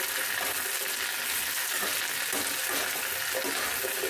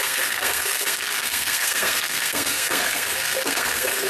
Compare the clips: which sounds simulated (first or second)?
second